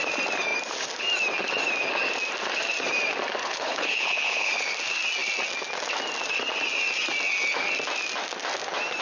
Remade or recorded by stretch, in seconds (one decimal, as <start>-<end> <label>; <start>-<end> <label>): 0.0-3.4 recorded; 3.4-4.5 remade; 4.5-9.0 recorded